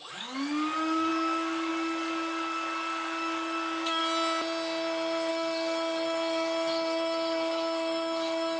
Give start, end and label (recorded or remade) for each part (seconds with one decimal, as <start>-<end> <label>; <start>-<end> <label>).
0.0-4.0 remade; 4.0-5.3 recorded; 5.3-8.6 remade